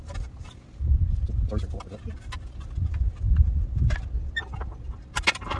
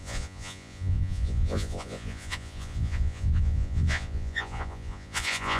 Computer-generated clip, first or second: second